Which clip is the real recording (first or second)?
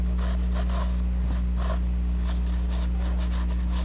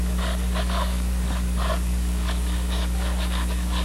first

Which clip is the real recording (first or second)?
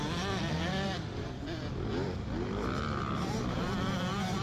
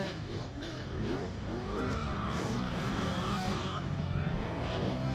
first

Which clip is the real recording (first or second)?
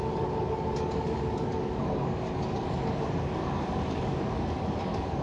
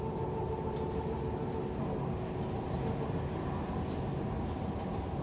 second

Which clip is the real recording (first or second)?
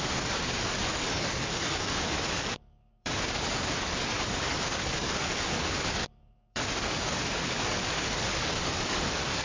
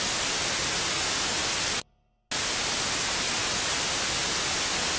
second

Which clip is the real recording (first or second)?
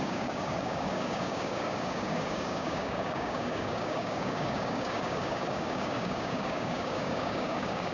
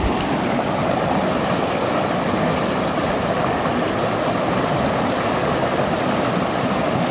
second